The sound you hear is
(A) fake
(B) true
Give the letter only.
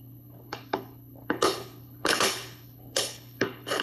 A